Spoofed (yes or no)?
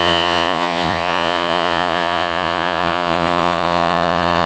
yes